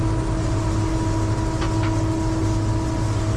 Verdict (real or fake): real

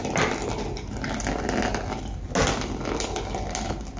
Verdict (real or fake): real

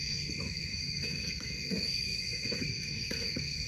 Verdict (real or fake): fake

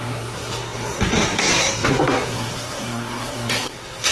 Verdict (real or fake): fake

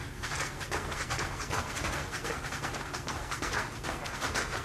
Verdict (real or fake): fake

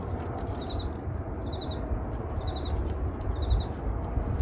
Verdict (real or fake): real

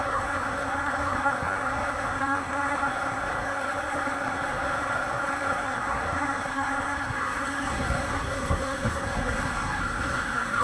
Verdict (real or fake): fake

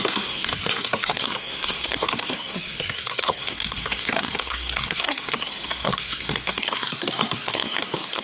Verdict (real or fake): fake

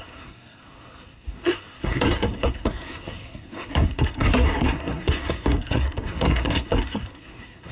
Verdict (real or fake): fake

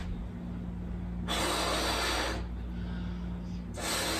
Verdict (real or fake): real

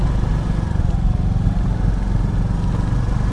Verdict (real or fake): real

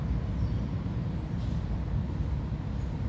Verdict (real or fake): real